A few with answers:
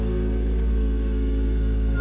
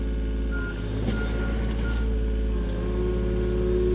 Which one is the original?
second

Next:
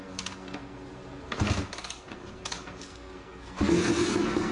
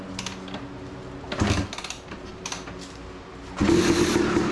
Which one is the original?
second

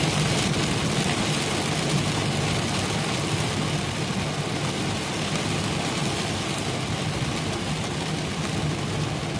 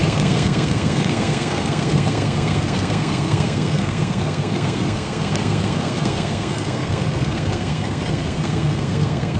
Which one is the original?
first